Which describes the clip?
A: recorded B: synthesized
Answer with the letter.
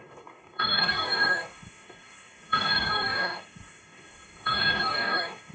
B